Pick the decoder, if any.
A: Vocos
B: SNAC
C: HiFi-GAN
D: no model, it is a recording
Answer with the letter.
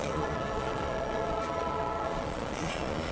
A